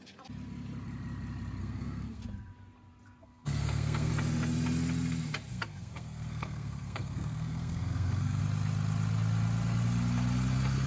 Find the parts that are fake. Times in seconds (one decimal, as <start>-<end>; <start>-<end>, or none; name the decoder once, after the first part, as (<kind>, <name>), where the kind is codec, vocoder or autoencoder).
1.6-2.2 (codec, SNAC); 3.2-4.1; 5.5-8.4